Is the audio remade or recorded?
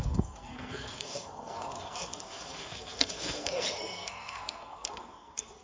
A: remade